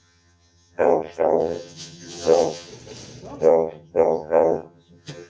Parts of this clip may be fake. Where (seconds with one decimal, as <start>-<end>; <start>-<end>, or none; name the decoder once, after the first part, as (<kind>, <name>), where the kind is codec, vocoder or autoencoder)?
0.0-2.7 (vocoder, HiFi-GAN); 3.4-5.3